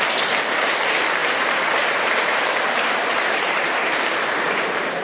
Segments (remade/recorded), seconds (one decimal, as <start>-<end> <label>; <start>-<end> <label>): 0.0-5.0 remade